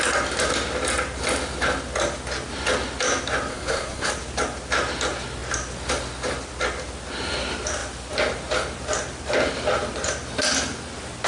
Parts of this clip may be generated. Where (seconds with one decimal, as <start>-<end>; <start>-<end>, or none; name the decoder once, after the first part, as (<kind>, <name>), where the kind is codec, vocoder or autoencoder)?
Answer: 3.5-4.1 (codec, SNAC)